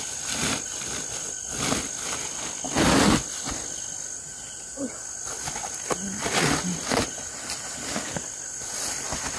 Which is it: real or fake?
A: real